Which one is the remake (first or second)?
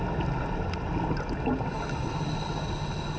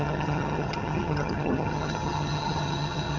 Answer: second